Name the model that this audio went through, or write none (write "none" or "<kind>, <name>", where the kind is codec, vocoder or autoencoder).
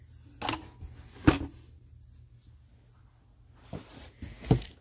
none